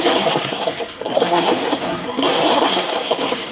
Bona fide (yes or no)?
no